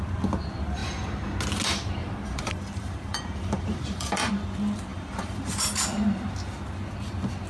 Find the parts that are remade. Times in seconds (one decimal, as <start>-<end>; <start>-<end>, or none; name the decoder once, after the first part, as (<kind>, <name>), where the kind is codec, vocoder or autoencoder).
2.0-4.3 (vocoder, BigVGAN v2); 4.9-5.4